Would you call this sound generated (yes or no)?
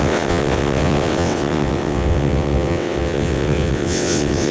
yes